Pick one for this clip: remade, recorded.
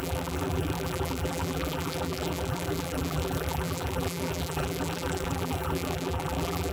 remade